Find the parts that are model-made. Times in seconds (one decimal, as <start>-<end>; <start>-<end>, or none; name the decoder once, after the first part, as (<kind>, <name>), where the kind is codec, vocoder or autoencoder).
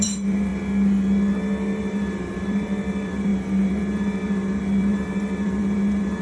0.0-0.5 (vocoder, BigVGAN v2); 1.8-6.2